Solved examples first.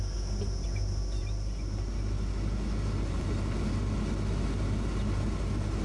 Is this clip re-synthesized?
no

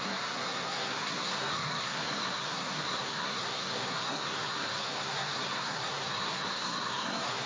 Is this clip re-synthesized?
yes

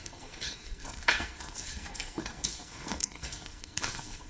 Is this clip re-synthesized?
yes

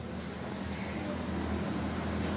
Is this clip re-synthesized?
no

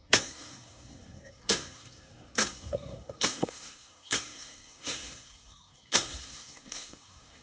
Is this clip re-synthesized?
yes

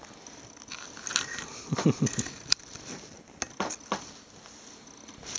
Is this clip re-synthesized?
no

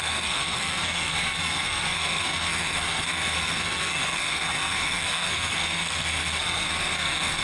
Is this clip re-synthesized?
yes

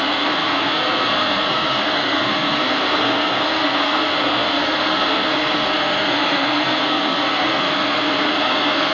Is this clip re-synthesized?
yes